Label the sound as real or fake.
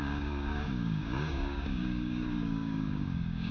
fake